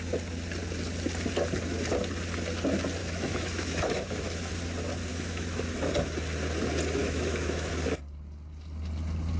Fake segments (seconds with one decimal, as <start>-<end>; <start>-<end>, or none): 3.0-4.5; 5.1-5.9; 7.0-7.7